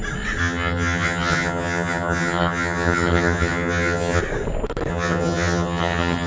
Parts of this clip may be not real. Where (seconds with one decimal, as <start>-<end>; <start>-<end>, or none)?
0.4-4.2; 4.9-6.3